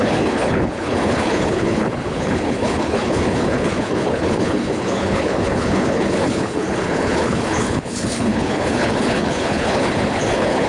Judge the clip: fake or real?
fake